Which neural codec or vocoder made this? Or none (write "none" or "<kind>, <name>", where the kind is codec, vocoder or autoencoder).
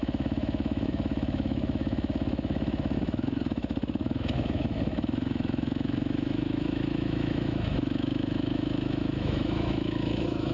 autoencoder, DAC-VAE